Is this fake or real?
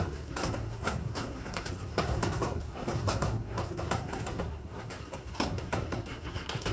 fake